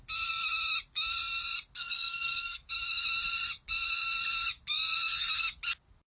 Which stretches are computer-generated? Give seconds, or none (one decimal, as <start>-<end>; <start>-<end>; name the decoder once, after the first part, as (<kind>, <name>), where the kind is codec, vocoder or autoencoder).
1.8-2.7 (codec, SNAC)